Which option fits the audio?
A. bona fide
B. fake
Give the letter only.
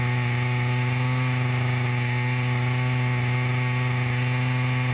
A